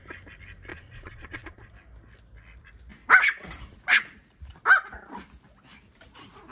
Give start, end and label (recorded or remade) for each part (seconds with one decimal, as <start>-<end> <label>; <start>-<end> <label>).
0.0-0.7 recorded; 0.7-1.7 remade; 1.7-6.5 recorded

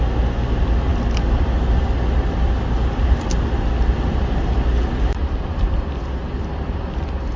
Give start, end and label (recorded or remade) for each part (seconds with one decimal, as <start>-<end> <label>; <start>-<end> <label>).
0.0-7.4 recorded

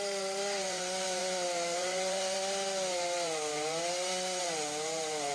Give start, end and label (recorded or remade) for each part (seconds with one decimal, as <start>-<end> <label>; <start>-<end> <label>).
0.0-5.3 remade